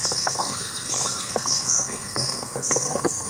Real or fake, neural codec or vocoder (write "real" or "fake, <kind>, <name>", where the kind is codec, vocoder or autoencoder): fake, codec, SNAC